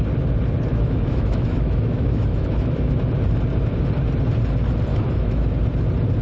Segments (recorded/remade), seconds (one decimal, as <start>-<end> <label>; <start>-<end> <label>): 0.0-0.7 recorded; 0.7-2.9 remade; 2.9-4.9 recorded; 4.9-5.6 remade; 5.6-6.2 recorded